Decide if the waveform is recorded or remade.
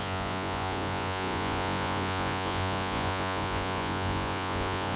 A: remade